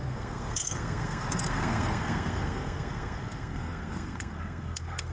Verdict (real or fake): fake